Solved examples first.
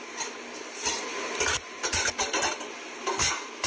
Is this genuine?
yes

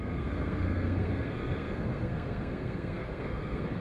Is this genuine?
no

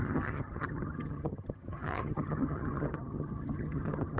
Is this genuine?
no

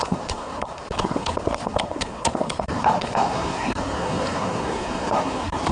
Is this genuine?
no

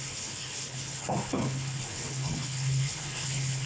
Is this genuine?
no